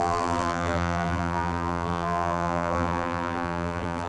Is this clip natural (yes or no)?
no